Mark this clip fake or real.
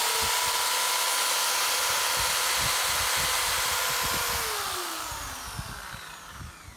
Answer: real